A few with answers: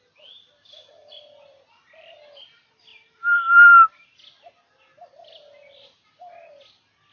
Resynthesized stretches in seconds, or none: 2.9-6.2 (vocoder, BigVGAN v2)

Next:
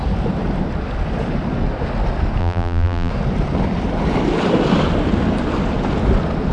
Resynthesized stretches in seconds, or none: 2.4-3.1 (vocoder, BigVGAN v2)

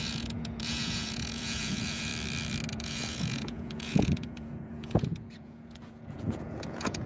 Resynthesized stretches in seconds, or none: 0.0-2.1 (vocoder, Vocos); 2.7-7.1